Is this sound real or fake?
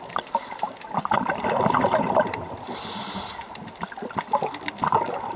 real